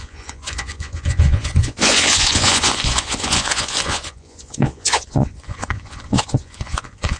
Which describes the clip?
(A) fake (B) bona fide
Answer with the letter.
A